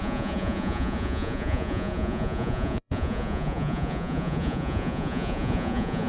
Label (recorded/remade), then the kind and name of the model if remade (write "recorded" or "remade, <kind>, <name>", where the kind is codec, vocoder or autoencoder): remade, vocoder, Vocos